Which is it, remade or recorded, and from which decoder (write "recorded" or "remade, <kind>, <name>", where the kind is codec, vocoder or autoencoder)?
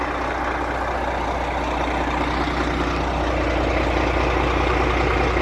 recorded